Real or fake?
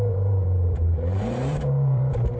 fake